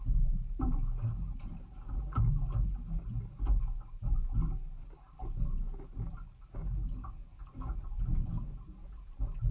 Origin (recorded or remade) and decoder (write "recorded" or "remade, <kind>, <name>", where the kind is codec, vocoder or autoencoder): recorded